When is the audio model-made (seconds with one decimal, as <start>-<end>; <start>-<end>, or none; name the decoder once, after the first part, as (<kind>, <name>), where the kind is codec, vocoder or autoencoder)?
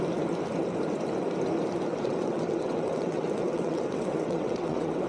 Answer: 1.9-5.1 (vocoder, WaveNeXt)